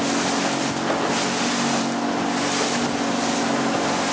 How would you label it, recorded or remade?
recorded